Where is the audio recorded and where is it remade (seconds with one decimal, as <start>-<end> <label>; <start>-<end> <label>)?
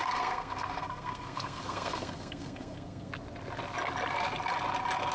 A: 0.0-3.1 remade; 3.1-5.1 recorded